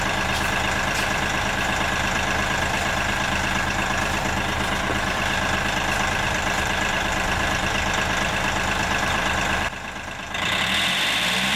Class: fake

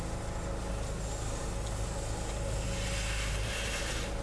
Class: real